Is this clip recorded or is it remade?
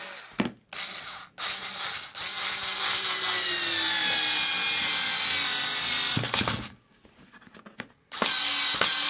recorded